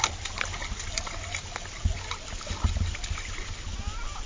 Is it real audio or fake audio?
real